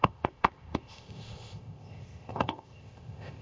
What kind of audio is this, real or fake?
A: fake